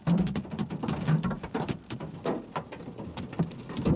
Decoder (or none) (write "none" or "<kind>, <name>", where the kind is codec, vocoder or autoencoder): none